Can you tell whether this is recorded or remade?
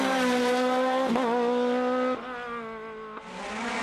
recorded